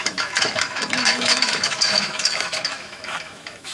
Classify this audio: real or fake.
fake